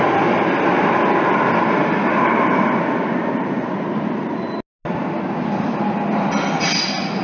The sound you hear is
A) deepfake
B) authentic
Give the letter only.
B